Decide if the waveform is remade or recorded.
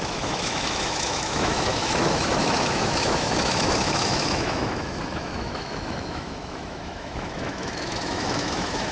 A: remade